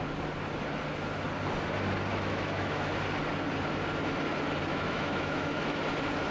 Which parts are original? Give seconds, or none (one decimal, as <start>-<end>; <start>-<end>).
0.0-2.1; 2.9-4.7; 5.8-6.3